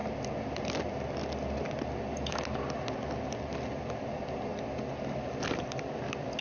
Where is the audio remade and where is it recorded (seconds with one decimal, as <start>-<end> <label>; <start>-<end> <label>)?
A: 0.0-6.4 recorded